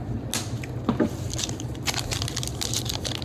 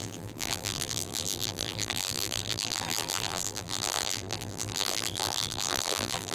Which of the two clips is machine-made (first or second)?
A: second